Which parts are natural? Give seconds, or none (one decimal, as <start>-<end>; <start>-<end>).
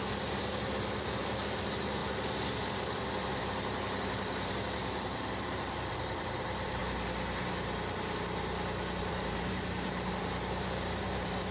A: 2.0-3.4; 6.8-9.0